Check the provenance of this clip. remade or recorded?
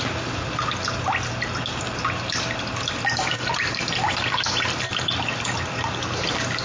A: recorded